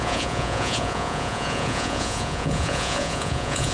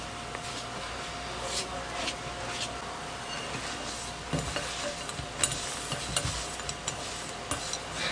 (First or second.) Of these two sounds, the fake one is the first